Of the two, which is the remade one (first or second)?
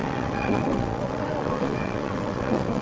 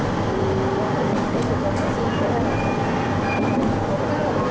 first